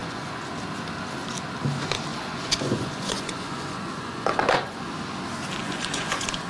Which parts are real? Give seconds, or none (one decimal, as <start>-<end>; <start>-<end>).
0.5-2.1; 4.9-5.6